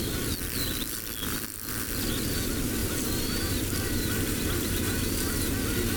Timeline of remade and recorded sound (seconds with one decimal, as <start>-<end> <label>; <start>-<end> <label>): 0.0-2.8 recorded; 2.8-5.5 remade; 5.5-6.0 recorded